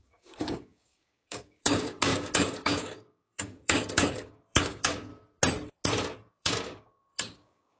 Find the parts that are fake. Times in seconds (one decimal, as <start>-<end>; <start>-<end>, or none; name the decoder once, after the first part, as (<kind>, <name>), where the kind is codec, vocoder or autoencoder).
0.0-5.1 (codec, DAC); 6.3-7.8